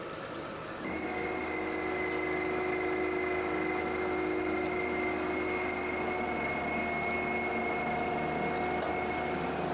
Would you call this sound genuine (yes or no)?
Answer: yes